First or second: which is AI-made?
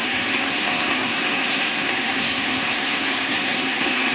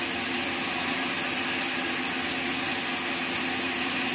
first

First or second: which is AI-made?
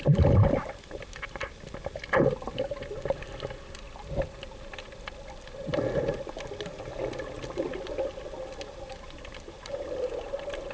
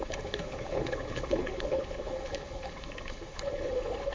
second